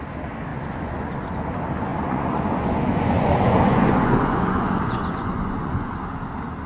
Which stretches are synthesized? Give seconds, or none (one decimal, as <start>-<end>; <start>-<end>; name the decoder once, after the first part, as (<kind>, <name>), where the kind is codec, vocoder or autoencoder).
0.5-1.3 (vocoder, Vocos); 1.9-5.9